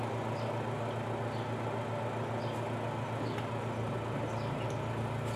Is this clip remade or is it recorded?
recorded